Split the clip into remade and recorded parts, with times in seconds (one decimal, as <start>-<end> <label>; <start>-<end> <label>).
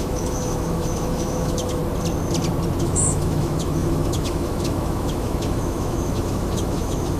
0.0-1.8 remade; 1.8-2.8 recorded; 2.8-7.2 remade